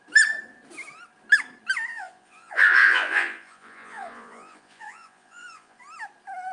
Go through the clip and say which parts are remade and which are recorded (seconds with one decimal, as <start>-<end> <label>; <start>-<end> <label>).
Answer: 0.0-1.9 recorded; 1.9-5.8 remade; 5.8-6.5 recorded